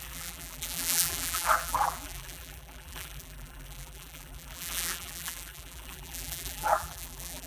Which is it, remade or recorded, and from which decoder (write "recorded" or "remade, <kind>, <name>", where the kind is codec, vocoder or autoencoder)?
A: remade, vocoder, BigVGAN v2